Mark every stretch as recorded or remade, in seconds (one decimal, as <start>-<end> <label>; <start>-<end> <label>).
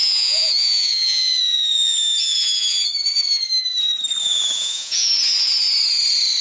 0.0-2.9 remade; 2.9-4.2 recorded; 4.2-5.1 remade; 5.1-6.4 recorded